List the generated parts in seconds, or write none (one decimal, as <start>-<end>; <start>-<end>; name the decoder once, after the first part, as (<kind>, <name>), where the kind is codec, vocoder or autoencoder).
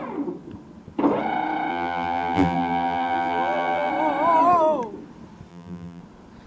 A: 1.7-3.9 (vocoder, BigVGAN v2); 5.5-6.0